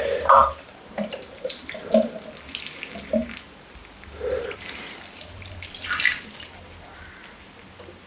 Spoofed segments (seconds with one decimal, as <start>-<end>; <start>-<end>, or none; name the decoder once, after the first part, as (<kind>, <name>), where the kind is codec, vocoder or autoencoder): 0.4-2.2 (vocoder, BigVGAN v2); 3.2-5.8